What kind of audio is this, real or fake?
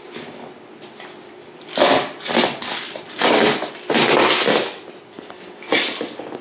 real